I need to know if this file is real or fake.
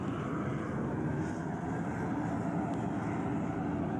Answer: real